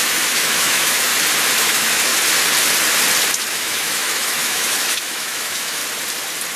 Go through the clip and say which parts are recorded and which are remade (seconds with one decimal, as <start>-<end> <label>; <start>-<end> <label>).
0.0-1.1 remade; 1.1-1.6 recorded; 1.6-2.1 remade; 2.1-3.5 recorded; 3.5-5.8 remade; 5.8-6.6 recorded